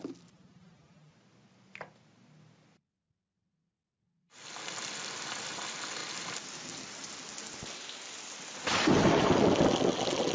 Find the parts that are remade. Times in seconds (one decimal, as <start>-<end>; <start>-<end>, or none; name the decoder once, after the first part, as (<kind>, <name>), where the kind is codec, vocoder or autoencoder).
none

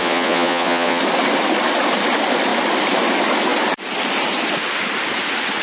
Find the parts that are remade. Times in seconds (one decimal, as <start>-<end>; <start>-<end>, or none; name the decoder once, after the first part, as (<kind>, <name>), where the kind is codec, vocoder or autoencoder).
0.0-1.0 (vocoder, Vocos)

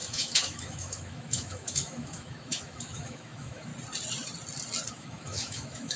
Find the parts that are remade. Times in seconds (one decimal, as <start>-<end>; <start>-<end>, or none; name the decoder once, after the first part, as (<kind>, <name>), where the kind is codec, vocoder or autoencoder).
0.0-3.7 (autoencoder, DAC-VAE); 4.9-6.0

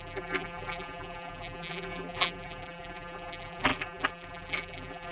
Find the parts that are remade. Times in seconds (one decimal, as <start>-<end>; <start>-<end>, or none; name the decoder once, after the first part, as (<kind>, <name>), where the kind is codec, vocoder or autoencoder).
0.0-5.1 (vocoder, BigVGAN v2)

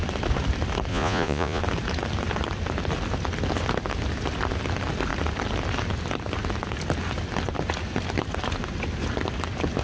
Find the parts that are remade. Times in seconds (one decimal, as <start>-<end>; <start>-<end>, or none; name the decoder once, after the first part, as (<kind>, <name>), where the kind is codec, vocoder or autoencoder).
0.9-1.6 (vocoder, Vocos)

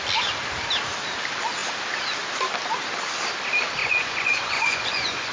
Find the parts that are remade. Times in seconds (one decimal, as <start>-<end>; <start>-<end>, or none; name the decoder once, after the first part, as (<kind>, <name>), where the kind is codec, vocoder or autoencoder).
3.8-5.3 (vocoder, Vocos)